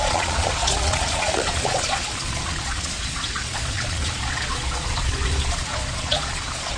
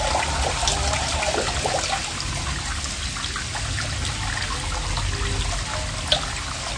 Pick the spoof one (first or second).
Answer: first